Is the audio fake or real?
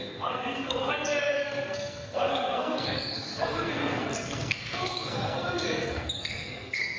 fake